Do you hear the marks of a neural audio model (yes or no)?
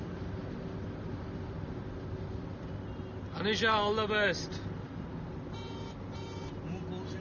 no